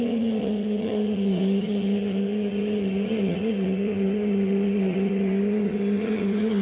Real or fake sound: fake